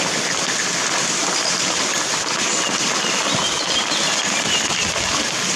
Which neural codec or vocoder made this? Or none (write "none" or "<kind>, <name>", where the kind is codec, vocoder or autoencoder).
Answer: none